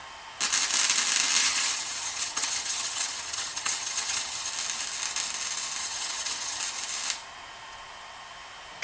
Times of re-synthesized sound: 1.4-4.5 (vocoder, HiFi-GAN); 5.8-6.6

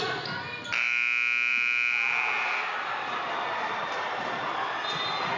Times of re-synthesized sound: 1.5-4.5 (vocoder, BigVGAN v2)

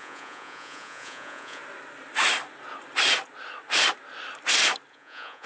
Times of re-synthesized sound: 0.0-1.6 (vocoder, Vocos); 4.9-5.5

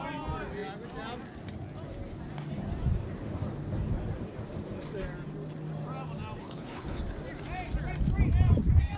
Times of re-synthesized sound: 6.4-7.0 (codec, HILCodec)

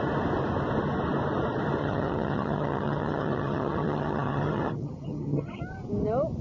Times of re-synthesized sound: 1.8-5.6 (vocoder, HiFi-GAN)

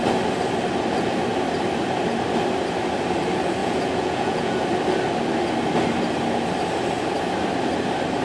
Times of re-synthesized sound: 3.6-4.6 (vocoder, Vocos)